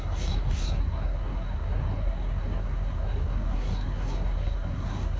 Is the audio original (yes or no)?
no